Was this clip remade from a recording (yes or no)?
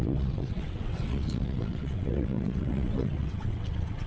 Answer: yes